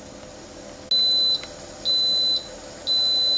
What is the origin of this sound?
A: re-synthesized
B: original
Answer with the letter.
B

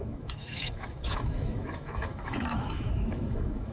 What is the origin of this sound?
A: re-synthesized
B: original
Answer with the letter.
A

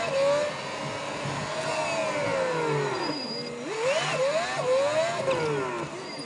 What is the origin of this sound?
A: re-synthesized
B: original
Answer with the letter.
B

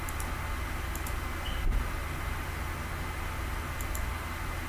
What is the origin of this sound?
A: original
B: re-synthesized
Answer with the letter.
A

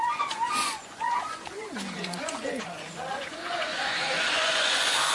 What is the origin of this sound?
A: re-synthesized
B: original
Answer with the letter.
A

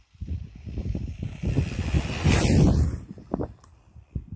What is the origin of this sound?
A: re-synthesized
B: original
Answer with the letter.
B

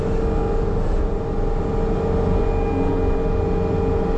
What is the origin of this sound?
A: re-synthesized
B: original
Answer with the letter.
B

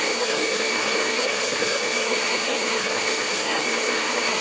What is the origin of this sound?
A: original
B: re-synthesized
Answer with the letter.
B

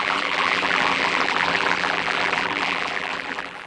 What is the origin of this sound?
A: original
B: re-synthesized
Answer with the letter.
B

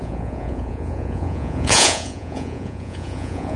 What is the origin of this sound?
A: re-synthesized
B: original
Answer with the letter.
A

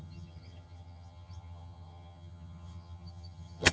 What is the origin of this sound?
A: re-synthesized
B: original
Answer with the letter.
A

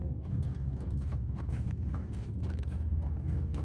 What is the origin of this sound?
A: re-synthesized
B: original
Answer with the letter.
A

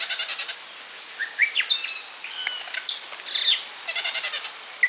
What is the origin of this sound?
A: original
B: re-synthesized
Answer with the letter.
A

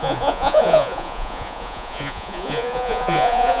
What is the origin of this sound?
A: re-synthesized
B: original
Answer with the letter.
A